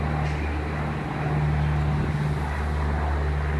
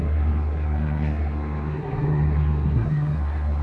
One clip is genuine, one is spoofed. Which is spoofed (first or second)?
second